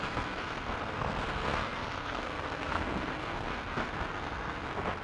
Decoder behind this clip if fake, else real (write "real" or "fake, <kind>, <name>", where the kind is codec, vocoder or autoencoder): fake, codec, SNAC